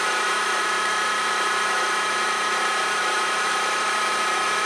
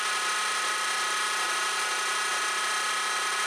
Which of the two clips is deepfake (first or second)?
first